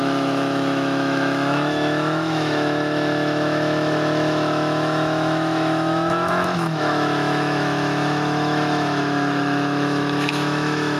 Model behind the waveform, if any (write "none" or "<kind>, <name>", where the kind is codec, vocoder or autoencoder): autoencoder, DAC-VAE